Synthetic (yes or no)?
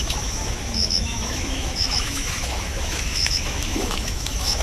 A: yes